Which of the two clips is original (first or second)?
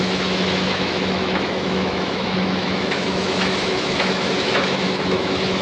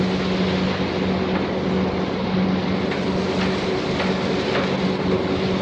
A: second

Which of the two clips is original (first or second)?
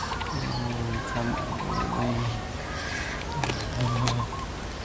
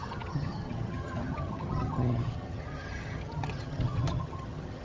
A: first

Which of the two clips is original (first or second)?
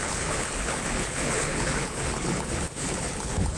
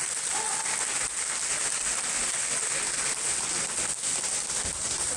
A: second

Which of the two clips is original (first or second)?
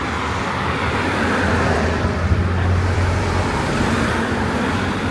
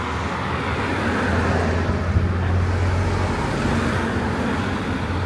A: second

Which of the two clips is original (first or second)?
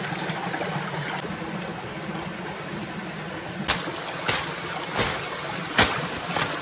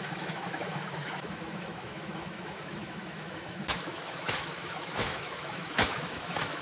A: first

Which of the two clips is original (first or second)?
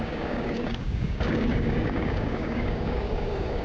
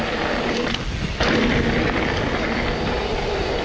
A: second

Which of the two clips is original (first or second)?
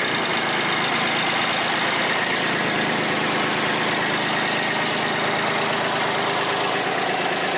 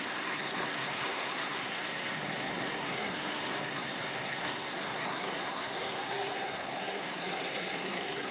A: first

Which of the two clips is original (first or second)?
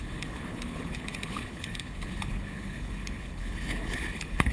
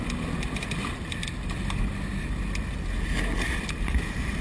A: second